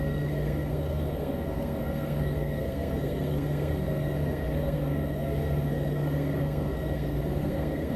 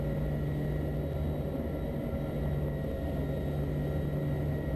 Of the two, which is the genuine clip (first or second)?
second